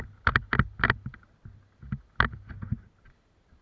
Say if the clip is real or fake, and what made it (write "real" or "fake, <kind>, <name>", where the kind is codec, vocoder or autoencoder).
real